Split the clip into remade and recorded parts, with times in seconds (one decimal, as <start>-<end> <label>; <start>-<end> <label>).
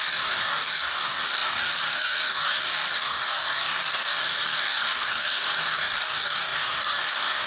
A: 0.0-7.5 remade